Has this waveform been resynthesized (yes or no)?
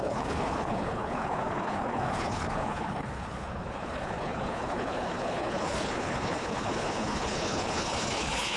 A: yes